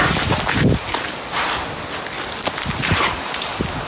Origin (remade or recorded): recorded